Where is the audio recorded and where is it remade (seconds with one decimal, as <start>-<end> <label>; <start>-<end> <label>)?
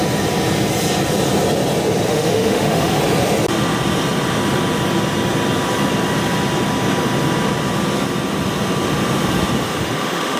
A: 0.0-2.1 recorded; 2.1-3.0 remade; 3.0-9.7 recorded; 9.7-10.4 remade